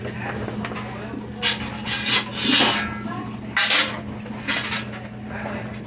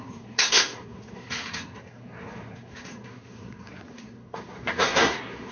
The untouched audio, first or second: first